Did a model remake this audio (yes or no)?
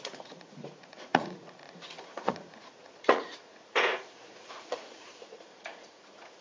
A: yes